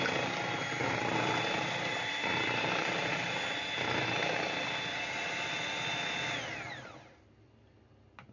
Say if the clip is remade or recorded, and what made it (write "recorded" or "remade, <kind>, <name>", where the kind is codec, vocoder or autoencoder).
recorded